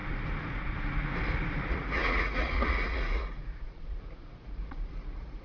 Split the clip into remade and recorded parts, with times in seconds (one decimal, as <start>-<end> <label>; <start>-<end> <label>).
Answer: 0.0-1.6 recorded; 1.6-5.4 remade